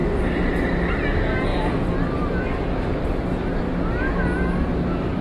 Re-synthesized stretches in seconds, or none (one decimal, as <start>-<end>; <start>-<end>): none